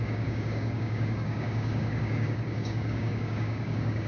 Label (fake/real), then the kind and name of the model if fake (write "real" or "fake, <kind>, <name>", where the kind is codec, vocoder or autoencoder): fake, codec, DAC